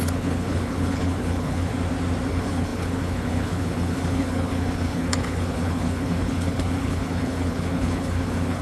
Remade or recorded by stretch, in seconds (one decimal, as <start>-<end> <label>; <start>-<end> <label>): 0.0-1.7 remade; 1.7-2.3 recorded; 2.3-8.6 remade